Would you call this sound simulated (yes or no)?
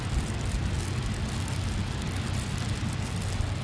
no